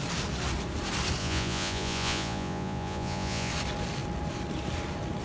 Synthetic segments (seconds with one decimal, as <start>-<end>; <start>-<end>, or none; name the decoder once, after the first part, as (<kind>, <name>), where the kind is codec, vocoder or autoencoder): 1.2-3.5 (vocoder, Vocos)